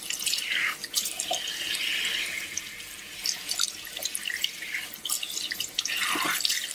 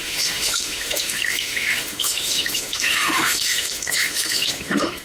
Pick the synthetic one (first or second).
second